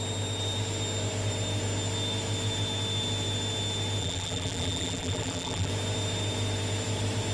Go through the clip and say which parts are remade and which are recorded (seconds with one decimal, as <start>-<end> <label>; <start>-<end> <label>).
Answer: 0.0-4.0 recorded; 4.0-5.7 remade; 5.7-7.3 recorded